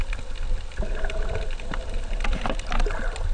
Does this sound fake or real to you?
real